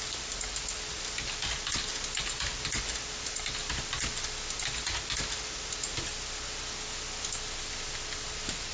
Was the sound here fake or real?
real